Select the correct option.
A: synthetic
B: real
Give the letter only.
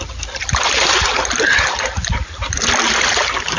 B